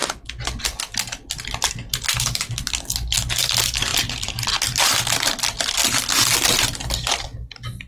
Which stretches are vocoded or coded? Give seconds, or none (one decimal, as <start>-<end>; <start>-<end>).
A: 2.1-2.6